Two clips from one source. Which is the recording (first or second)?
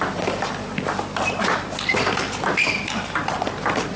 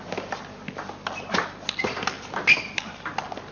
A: second